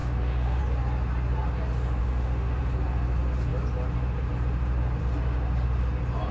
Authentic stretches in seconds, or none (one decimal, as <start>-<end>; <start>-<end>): 0.6-2.0; 2.6-6.3